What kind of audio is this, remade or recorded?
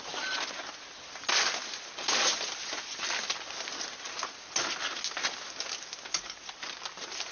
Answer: recorded